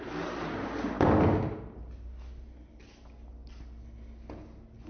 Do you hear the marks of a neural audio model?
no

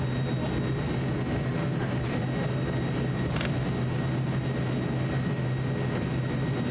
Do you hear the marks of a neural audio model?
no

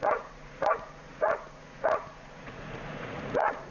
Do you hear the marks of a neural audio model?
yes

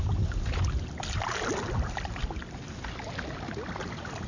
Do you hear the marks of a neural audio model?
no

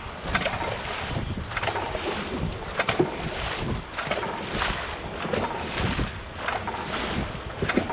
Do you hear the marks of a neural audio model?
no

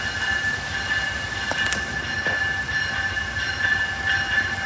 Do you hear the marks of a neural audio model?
no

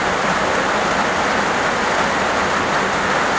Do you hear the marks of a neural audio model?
no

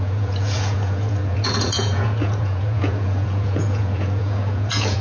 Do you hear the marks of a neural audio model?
yes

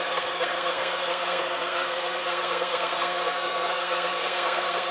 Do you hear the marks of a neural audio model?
yes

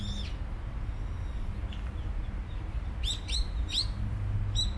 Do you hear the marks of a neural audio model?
no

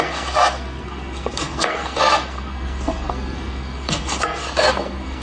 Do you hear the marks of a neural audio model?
yes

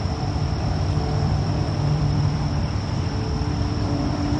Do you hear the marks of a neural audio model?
yes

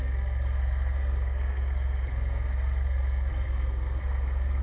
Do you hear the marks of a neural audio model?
yes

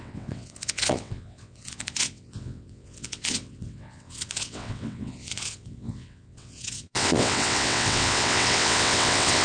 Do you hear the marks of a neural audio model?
yes